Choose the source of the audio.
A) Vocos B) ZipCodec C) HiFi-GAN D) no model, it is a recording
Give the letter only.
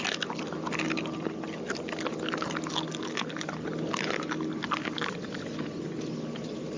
D